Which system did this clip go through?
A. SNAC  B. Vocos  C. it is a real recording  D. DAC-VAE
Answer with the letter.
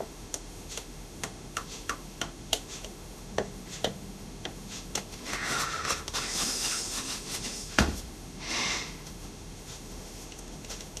D